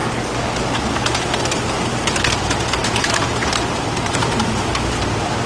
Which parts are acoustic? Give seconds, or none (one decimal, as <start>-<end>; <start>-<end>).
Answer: 0.0-2.8; 4.7-5.5